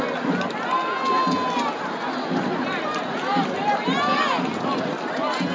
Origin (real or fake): real